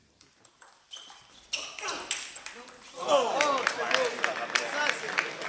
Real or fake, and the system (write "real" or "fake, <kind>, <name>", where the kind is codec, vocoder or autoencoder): real